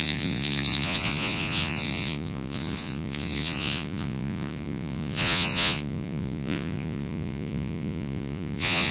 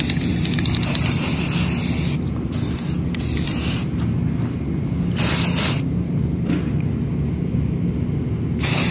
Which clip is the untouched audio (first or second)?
second